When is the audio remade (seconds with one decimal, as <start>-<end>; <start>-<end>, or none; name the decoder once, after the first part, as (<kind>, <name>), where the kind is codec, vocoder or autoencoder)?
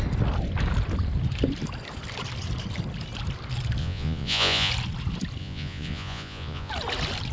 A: 3.8-4.7 (vocoder, Vocos); 5.4-6.7